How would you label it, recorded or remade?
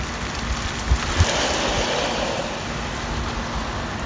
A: recorded